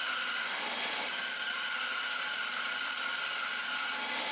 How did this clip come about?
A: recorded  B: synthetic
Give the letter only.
A